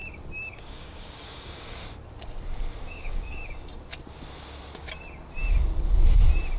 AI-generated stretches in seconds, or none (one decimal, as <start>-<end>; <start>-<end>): 0.5-1.8; 2.9-3.4